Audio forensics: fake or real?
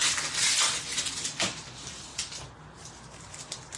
real